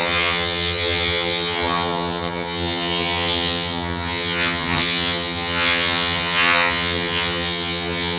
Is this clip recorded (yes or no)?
no